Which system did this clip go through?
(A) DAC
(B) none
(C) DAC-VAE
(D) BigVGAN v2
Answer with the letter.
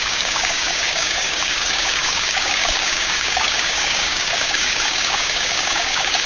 A